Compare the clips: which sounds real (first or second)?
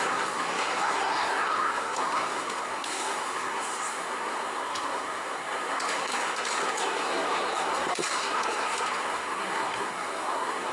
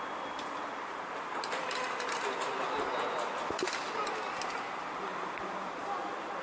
second